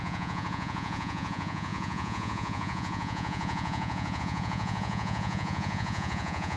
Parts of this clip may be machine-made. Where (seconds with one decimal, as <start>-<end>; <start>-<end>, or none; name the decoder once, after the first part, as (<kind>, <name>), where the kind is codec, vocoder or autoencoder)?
0.0-6.6 (vocoder, Vocos)